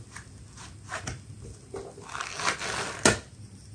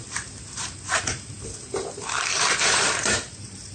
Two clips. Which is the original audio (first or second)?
first